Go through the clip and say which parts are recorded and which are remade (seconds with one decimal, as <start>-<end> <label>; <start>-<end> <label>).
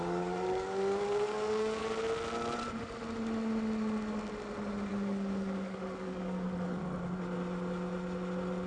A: 0.0-1.8 remade; 1.8-4.9 recorded; 4.9-6.8 remade; 6.8-8.7 recorded